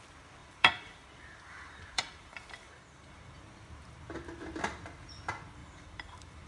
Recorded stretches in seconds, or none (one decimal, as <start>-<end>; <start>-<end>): 0.0-0.4; 3.4-5.6